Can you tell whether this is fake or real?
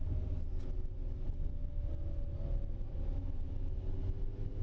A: real